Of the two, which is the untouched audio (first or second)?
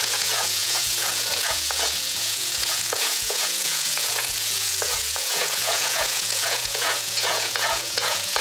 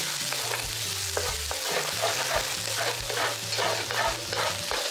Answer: second